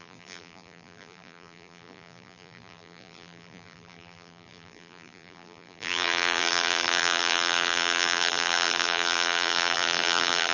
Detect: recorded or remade remade